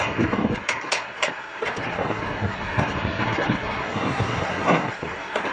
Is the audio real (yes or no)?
no